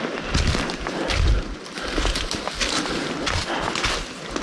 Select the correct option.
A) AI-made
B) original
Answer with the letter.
B